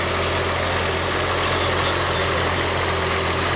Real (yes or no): yes